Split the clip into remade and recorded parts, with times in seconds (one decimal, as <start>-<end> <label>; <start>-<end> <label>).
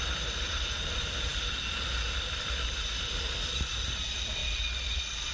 0.0-4.4 remade; 4.4-5.3 recorded